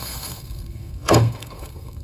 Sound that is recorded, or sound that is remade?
remade